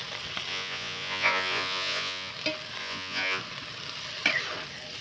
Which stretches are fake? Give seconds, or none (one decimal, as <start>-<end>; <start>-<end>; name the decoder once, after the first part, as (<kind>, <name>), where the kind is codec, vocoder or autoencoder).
0.5-2.3 (vocoder, Vocos); 2.8-3.4